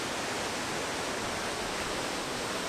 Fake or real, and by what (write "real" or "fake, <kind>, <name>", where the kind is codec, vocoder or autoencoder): real